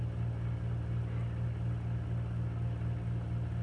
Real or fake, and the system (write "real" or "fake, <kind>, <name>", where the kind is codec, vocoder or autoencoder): real